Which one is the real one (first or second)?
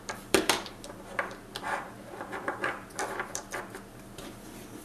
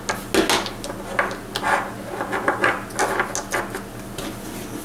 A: second